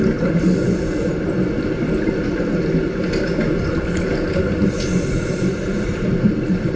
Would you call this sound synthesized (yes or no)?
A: no